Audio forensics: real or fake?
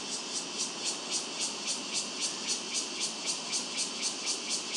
real